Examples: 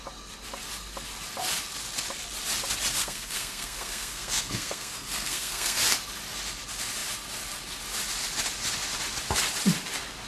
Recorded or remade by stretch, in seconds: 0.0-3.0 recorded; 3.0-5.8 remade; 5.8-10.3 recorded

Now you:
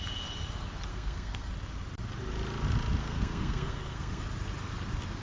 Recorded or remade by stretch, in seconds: 0.0-0.9 recorded; 0.9-1.5 remade; 1.5-3.0 recorded; 3.0-4.2 remade; 4.2-5.2 recorded

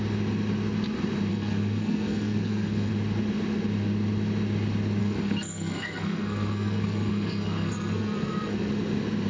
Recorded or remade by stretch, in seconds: 0.0-1.3 recorded; 1.3-2.9 remade; 2.9-5.0 recorded; 5.0-8.7 remade; 8.7-9.3 recorded

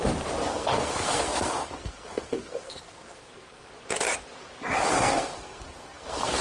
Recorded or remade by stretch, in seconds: 0.0-0.5 recorded; 0.5-3.7 remade; 3.7-4.9 recorded; 4.9-6.4 remade

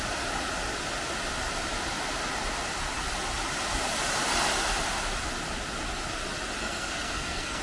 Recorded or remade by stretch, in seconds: 0.0-6.6 recorded; 6.6-7.6 remade

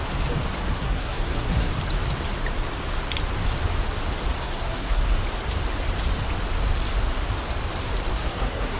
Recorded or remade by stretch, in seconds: 0.0-0.7 recorded; 0.7-1.7 remade; 1.7-4.4 recorded; 4.4-5.0 remade; 5.0-8.1 recorded; 8.1-8.8 remade

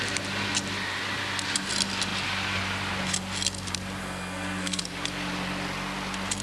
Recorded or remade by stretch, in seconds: 0.0-4.0 recorded; 4.0-4.8 remade; 4.8-6.4 recorded